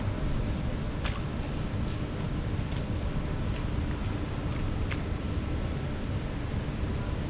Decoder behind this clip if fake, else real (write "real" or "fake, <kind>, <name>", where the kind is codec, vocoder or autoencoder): real